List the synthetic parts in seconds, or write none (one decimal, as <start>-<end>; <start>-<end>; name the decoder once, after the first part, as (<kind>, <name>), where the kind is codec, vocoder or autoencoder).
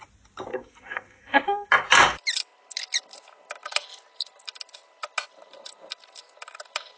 0.5-1.7 (codec, SNAC)